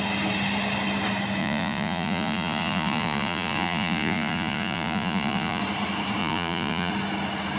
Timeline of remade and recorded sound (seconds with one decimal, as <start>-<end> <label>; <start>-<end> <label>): 0.0-1.4 recorded; 1.4-5.6 remade; 5.6-6.2 recorded; 6.2-6.9 remade; 6.9-7.6 recorded